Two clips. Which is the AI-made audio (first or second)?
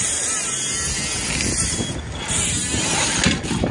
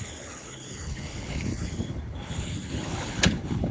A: second